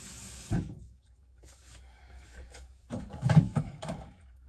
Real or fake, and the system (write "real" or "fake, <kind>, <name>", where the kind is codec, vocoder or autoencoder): fake, codec, DAC